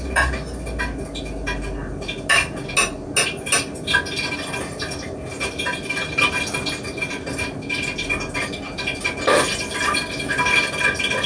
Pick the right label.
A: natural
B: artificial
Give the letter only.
A